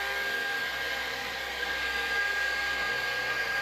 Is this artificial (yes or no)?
yes